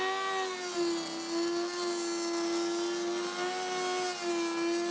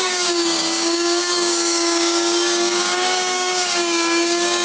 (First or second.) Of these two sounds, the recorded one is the first